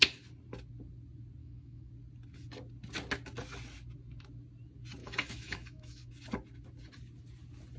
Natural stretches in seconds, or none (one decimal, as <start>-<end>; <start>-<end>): 0.0-1.4; 1.9-5.0; 6.1-7.8